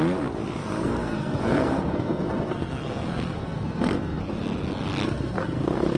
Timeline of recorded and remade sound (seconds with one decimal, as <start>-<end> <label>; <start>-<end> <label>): 0.0-0.6 recorded; 0.6-4.2 remade; 4.2-5.0 recorded; 5.0-6.0 remade